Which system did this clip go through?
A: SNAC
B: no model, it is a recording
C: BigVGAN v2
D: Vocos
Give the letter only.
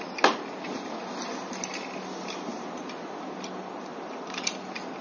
B